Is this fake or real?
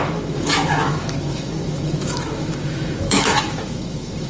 fake